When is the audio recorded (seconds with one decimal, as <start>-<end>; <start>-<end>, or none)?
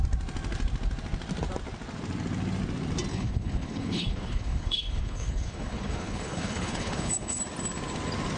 0.0-3.1; 7.4-8.4